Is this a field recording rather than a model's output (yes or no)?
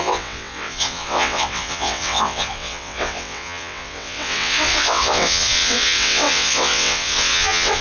no